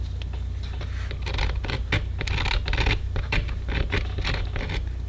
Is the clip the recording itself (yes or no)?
yes